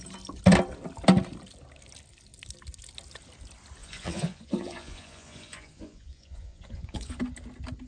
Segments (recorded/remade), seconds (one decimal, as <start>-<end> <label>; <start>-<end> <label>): 0.0-3.8 recorded; 3.8-7.2 remade; 7.2-7.9 recorded